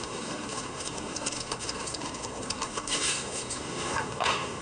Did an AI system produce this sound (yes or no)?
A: yes